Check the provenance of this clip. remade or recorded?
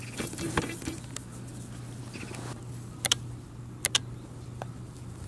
recorded